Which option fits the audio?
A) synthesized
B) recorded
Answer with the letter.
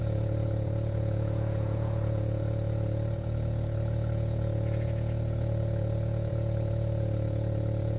A